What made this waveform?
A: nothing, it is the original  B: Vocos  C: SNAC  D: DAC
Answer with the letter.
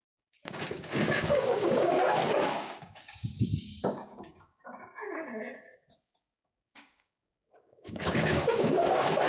D